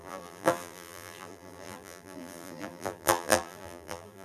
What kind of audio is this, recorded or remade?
remade